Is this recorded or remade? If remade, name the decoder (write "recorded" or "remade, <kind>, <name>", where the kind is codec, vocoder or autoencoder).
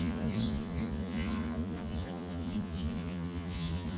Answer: remade, vocoder, Vocos